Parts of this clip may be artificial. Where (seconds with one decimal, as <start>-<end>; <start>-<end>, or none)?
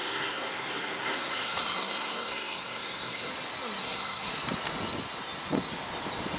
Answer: 0.0-3.3; 3.8-4.3